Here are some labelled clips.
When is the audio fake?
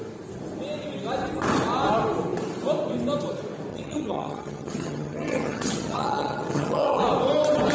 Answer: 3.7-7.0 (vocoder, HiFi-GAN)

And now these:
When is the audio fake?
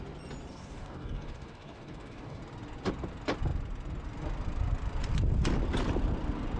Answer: 0.5-2.4 (codec, DAC)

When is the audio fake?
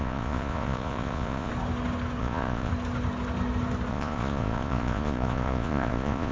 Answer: 0.0-1.5 (vocoder, Vocos); 2.2-2.7; 3.9-6.3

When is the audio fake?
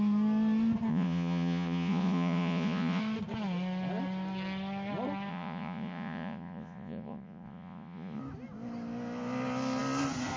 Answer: 0.9-3.0 (vocoder, Vocos); 5.3-8.2